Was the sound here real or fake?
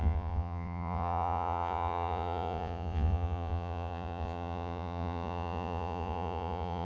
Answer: fake